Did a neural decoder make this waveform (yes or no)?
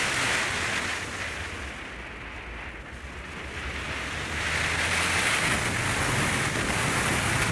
no